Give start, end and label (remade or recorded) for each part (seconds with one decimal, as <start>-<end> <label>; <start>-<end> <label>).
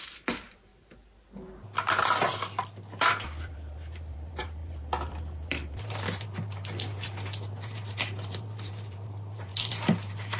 0.0-0.7 remade; 0.7-3.4 recorded; 3.4-10.4 remade